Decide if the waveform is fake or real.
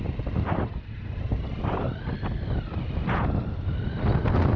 real